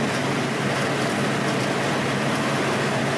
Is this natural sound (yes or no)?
yes